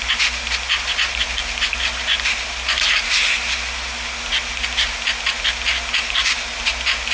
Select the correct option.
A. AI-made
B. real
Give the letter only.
B